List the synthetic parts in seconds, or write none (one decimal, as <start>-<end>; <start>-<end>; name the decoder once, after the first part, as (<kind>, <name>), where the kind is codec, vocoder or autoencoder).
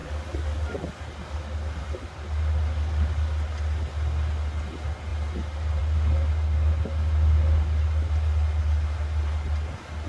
none